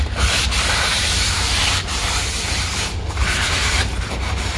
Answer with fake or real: fake